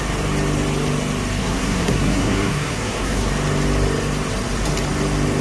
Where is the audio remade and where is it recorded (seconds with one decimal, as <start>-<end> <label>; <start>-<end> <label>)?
0.0-1.4 recorded; 1.4-3.3 remade; 3.3-5.4 recorded